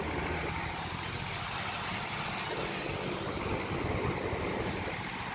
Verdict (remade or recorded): recorded